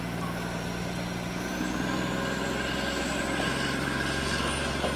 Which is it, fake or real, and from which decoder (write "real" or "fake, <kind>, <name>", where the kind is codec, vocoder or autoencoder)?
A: real